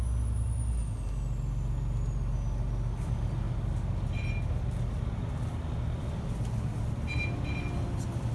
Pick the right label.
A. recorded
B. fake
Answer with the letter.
A